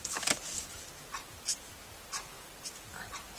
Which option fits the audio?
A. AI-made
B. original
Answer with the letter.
B